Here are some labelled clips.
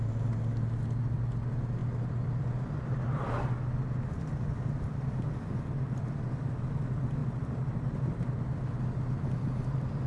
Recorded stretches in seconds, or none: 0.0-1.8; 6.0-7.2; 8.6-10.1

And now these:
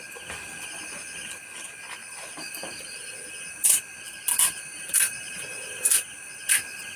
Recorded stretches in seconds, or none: 0.0-2.0; 3.8-4.7; 6.1-7.0

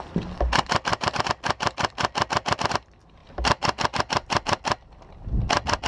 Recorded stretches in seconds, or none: 0.0-0.9; 1.9-3.2; 4.3-5.9

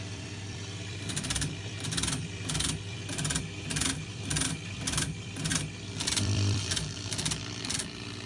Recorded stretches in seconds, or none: 5.5-6.0

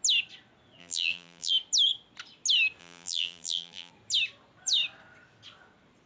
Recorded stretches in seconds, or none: 0.0-0.8; 1.5-2.8; 3.9-6.1

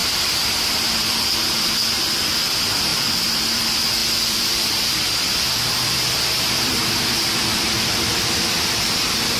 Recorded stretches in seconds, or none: none

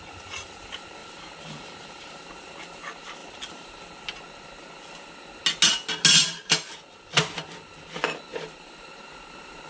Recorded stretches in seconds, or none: 0.0-1.0; 2.3-3.2; 3.8-8.3; 9.0-9.7